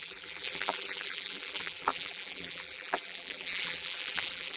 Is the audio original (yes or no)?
no